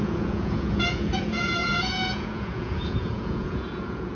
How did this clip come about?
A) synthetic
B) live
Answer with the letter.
A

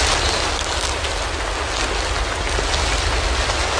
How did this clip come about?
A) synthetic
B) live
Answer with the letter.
B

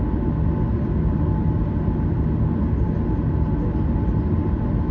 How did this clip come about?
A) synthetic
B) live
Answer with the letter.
B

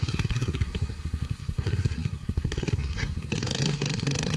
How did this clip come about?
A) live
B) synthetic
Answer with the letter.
B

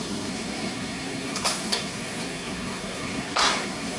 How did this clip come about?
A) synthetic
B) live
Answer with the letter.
A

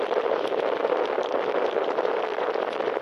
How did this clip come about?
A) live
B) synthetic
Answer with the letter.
A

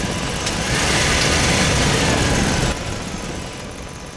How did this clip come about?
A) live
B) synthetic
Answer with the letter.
A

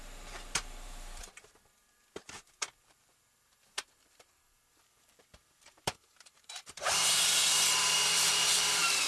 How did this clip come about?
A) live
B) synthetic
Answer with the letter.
B